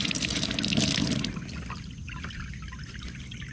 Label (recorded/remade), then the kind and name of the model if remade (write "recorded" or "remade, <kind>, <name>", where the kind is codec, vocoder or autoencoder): recorded